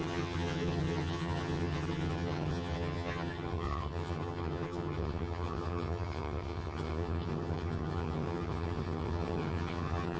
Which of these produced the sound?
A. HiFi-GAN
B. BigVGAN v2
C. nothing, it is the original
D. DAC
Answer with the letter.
A